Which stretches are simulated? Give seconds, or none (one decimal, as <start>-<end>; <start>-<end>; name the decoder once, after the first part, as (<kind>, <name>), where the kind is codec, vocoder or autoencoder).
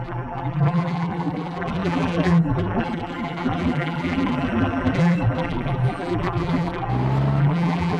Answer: 0.0-6.9 (vocoder, BigVGAN v2); 7.4-8.0